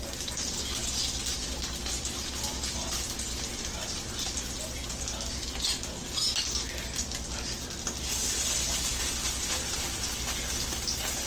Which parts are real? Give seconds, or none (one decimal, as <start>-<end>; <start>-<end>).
0.0-11.3